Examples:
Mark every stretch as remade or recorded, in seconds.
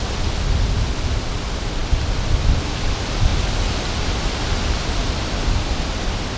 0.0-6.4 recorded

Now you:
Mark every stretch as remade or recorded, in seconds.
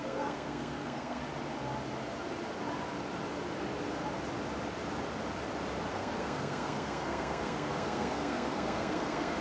0.0-1.2 remade; 1.2-5.9 recorded; 5.9-9.4 remade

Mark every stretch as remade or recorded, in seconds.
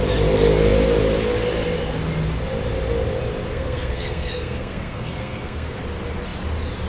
0.0-3.5 recorded; 3.5-5.8 remade; 5.8-6.9 recorded